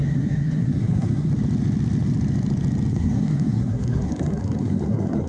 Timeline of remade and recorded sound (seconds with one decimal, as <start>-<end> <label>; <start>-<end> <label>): 0.0-1.3 remade; 1.3-2.9 recorded; 2.9-5.3 remade